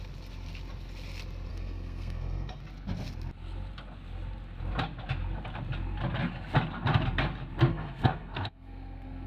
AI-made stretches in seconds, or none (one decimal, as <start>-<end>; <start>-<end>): 1.5-2.6; 7.7-9.3